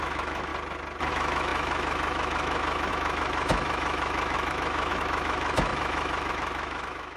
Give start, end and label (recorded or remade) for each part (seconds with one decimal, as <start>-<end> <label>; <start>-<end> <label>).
0.0-0.5 remade; 0.5-1.1 recorded; 1.1-7.2 remade

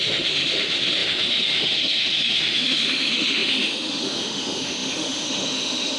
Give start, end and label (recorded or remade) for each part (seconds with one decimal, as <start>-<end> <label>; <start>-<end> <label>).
0.0-6.0 remade

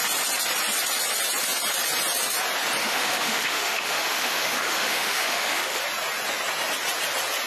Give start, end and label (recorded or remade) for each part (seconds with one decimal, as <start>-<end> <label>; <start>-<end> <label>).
0.0-2.8 recorded; 2.8-5.8 remade; 5.8-7.5 recorded

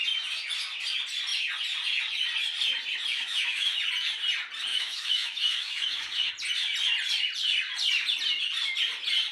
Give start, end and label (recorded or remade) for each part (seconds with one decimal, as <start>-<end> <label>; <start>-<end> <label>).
0.0-3.1 recorded; 3.1-3.8 remade; 3.8-4.7 recorded; 4.7-6.3 remade; 6.3-9.3 recorded

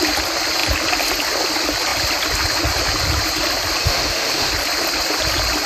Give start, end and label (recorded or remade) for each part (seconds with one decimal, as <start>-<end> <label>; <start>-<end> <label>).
0.0-3.8 recorded; 3.8-4.5 remade; 4.5-5.7 recorded

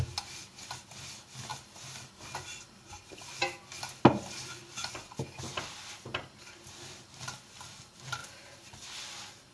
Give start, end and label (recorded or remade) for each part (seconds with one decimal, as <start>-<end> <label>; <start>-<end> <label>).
0.0-9.5 recorded